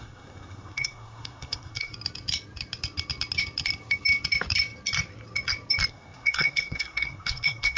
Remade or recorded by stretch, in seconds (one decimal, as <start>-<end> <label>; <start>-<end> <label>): 0.0-1.9 remade; 1.9-5.9 recorded; 5.9-7.8 remade